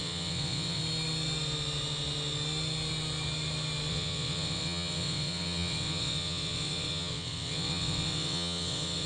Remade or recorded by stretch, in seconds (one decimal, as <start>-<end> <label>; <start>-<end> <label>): 0.0-0.8 remade; 0.8-3.9 recorded; 3.9-9.1 remade